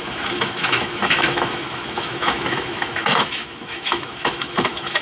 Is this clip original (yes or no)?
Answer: no